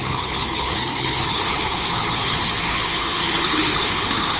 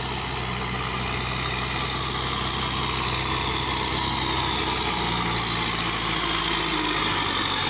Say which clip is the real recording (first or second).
second